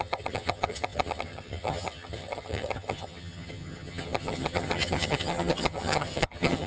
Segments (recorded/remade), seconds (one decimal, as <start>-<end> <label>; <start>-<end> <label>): 0.0-6.7 remade